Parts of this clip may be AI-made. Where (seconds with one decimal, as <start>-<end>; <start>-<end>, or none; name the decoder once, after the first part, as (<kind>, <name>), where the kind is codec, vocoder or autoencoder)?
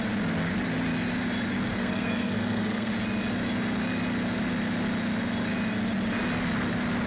1.7-2.9 (codec, SNAC)